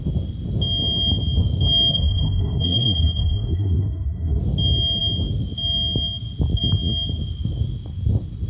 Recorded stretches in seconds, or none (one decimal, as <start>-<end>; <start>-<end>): 0.0-1.9; 4.4-8.5